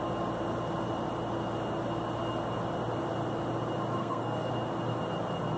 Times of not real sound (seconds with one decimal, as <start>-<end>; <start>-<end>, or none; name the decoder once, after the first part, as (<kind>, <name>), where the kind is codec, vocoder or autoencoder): 4.0-4.5 (codec, SNAC)